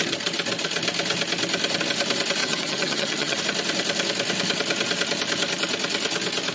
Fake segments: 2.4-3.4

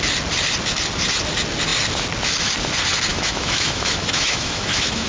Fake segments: 3.1-5.1

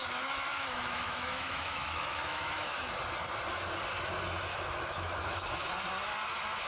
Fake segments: 0.0-2.8; 4.5-5.7

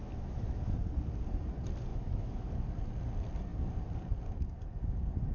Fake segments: 0.0-0.6; 1.9-2.5

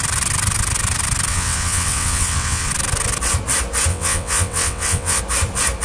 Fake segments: 1.3-2.7; 3.9-5.2

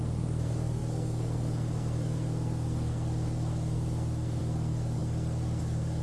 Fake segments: 0.0-6.0

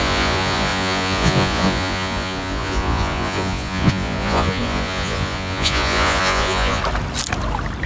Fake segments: 0.0-6.8

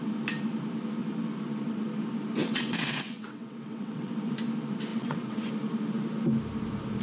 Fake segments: 2.4-4.1; 4.9-5.5